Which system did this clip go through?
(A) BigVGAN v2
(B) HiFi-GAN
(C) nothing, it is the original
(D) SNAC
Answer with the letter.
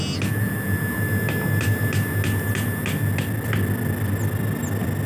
C